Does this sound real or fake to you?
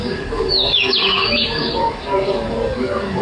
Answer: fake